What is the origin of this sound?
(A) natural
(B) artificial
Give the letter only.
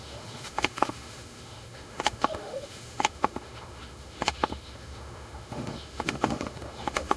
B